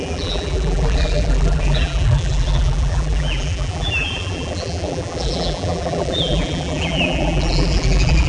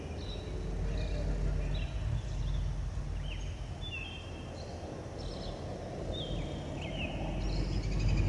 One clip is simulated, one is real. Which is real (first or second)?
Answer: second